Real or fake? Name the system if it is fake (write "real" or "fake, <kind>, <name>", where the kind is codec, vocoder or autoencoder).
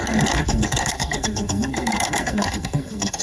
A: fake, codec, SNAC